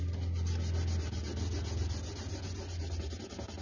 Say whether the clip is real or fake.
real